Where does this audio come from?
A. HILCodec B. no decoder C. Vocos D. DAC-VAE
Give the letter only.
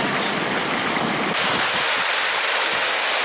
B